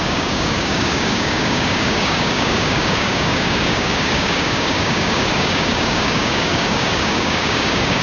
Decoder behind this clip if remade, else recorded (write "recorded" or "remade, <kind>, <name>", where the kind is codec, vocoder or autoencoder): remade, codec, DAC